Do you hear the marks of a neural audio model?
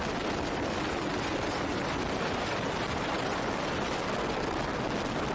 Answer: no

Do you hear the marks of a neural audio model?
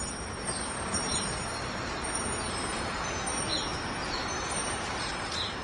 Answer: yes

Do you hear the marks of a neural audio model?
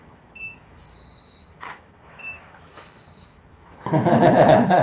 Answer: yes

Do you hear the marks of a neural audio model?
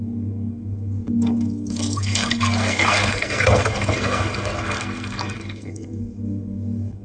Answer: yes